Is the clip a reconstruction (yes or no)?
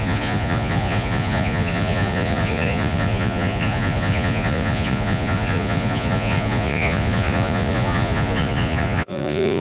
yes